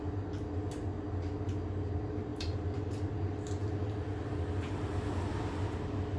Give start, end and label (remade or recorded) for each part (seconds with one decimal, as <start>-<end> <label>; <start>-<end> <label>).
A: 0.0-2.3 recorded; 2.3-2.9 remade; 2.9-6.2 recorded